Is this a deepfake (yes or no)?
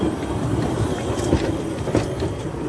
no